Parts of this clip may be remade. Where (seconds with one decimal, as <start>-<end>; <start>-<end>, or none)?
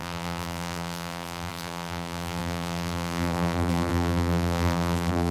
0.0-5.3